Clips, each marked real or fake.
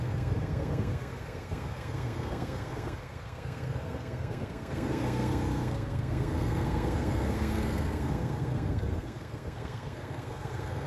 fake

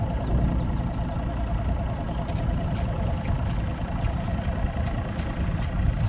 real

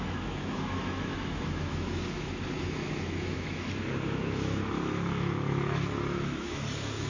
fake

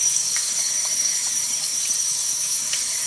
fake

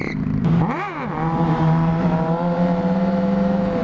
fake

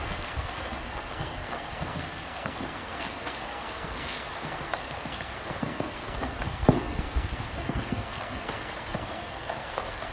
fake